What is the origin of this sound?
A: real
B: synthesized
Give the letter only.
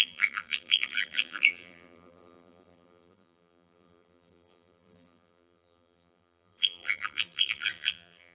B